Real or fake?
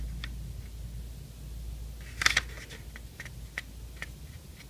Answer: real